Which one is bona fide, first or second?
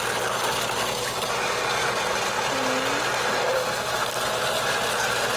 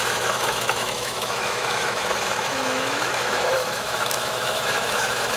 first